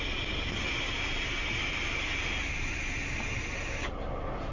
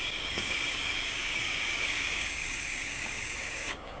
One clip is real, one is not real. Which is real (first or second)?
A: first